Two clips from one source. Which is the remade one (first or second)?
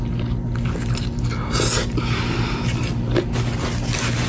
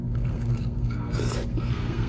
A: second